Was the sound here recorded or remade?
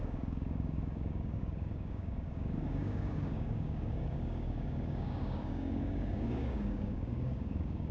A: remade